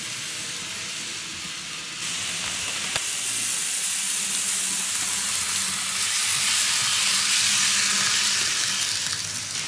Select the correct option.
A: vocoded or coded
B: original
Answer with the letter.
B